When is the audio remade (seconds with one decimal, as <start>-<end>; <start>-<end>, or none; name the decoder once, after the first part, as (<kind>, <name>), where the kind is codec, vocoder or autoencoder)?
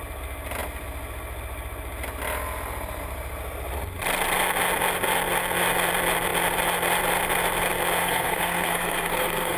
8.0-9.6 (codec, SNAC)